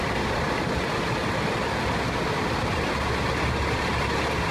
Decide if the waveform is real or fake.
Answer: real